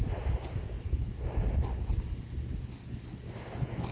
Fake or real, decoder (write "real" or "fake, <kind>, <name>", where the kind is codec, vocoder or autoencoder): real